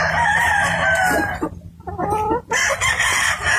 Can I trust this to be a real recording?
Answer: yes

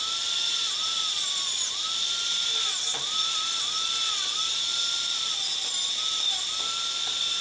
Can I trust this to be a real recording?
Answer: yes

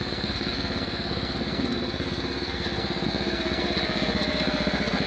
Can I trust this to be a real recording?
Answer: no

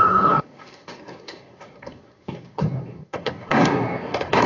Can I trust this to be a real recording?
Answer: no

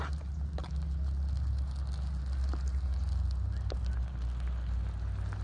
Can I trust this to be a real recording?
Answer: yes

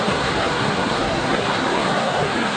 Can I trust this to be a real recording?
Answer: no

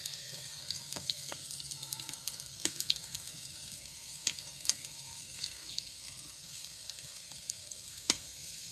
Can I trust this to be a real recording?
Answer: no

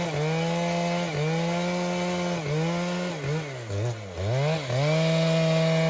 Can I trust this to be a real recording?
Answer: yes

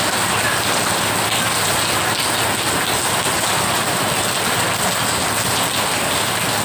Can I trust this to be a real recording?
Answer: yes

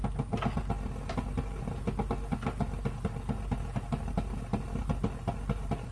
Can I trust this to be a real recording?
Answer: yes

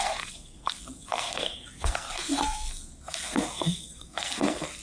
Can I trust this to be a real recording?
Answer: no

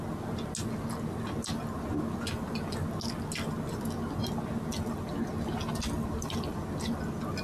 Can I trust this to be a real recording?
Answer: yes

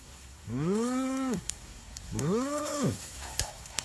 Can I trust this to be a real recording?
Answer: no